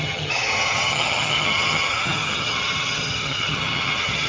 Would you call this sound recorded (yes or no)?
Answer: no